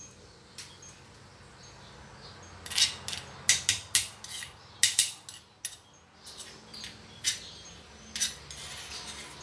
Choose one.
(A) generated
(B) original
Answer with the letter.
B